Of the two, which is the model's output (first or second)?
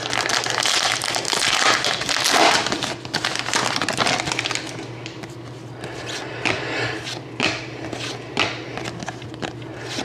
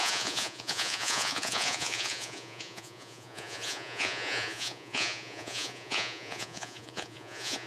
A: second